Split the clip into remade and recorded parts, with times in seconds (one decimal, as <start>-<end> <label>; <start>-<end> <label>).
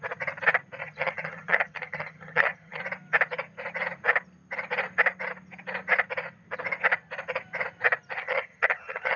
0.0-0.8 recorded; 0.8-2.8 remade; 2.8-8.2 recorded; 8.2-9.2 remade